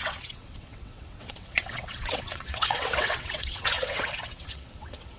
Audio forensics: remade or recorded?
remade